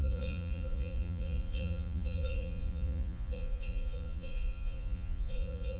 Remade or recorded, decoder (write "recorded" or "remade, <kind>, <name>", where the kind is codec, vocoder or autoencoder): remade, vocoder, Vocos